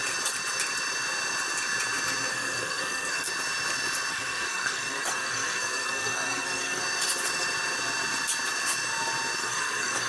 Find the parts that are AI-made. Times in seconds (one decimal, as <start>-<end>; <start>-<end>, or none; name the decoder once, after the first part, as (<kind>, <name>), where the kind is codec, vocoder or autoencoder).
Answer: 2.3-3.3 (codec, SNAC); 4.1-6.8; 9.4-10.1